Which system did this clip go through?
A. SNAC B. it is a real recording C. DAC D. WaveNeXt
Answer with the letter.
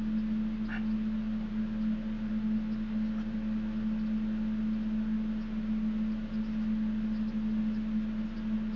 B